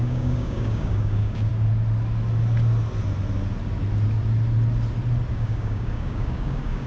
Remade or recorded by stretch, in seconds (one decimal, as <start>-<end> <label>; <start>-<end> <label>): 0.0-1.5 remade; 1.5-5.3 recorded; 5.3-6.9 remade